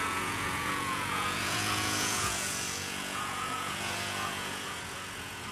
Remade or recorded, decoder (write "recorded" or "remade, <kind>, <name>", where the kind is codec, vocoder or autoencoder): remade, vocoder, Vocos